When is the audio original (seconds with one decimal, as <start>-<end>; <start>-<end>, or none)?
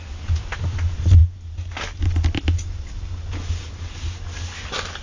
0.0-5.0